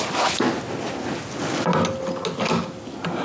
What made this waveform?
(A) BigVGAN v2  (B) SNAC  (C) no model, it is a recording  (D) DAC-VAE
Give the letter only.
C